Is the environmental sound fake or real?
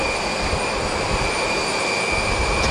real